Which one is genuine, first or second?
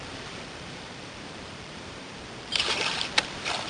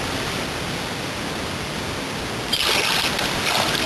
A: second